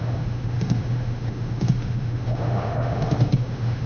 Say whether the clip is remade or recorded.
remade